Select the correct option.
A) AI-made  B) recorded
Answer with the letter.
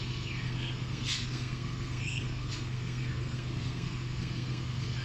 A